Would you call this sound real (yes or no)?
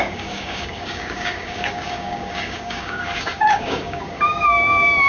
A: no